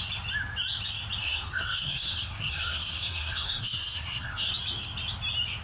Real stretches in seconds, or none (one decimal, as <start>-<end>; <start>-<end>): 0.0-1.2; 4.5-5.6